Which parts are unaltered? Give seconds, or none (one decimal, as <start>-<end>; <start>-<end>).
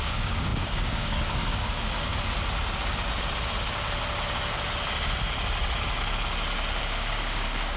2.1-6.8